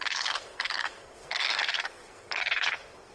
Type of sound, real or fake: fake